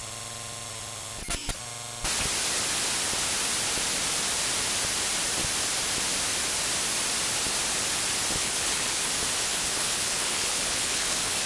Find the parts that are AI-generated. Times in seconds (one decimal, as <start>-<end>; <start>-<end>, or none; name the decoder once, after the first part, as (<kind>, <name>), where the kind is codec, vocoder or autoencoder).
8.4-9.1 (codec, HILCodec); 9.5-11.5